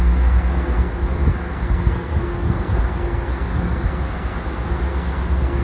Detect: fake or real fake